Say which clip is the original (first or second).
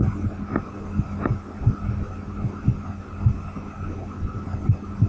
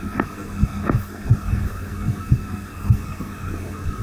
first